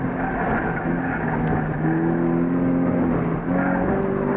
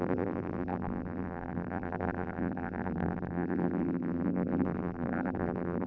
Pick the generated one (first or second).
second